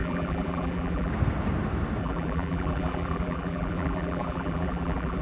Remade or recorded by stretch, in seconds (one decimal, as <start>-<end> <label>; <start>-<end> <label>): 0.0-1.1 remade; 1.1-2.0 recorded; 2.0-5.2 remade